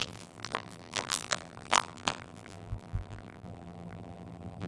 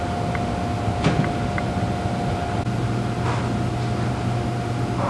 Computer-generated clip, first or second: first